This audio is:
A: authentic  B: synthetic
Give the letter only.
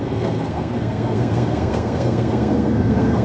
B